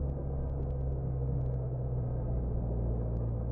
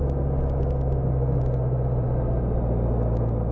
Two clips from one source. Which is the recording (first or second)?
second